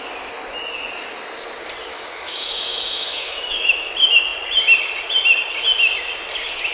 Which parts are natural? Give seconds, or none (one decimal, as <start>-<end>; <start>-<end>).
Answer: 0.0-1.9; 3.9-6.7